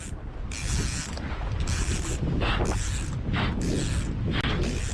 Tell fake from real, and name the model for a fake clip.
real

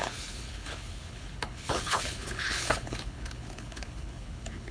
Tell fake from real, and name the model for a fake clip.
fake, codec, HILCodec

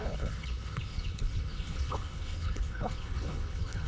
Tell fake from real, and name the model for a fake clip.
fake, codec, HILCodec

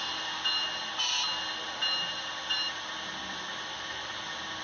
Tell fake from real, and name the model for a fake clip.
real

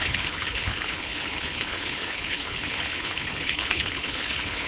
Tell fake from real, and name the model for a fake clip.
fake, codec, HILCodec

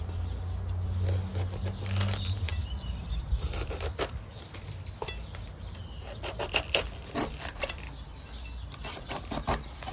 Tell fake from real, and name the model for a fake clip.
real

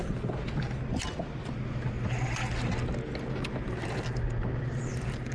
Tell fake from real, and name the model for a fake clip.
real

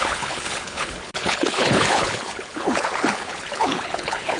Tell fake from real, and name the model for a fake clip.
fake, codec, HILCodec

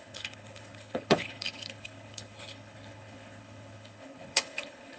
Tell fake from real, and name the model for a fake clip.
fake, codec, HILCodec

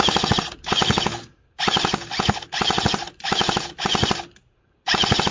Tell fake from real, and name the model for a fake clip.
real